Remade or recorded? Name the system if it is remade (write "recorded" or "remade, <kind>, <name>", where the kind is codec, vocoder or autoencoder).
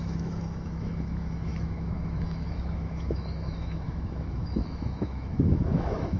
remade, autoencoder, DAC-VAE